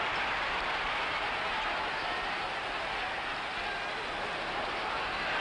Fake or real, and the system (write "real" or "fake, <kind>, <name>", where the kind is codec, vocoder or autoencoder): real